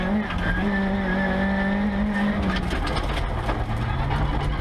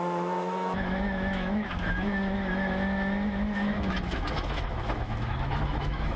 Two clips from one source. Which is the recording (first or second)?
first